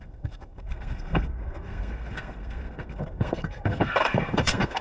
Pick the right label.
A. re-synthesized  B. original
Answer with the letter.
A